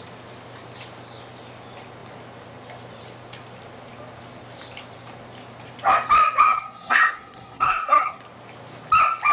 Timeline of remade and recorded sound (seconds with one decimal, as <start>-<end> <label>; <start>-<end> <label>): 0.0-6.4 recorded; 6.4-8.2 remade; 8.2-9.3 recorded